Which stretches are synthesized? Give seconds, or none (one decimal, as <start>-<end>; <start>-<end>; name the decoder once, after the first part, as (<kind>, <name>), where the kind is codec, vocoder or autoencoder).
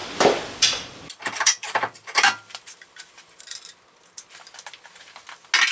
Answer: 0.0-3.4 (vocoder, BigVGAN v2)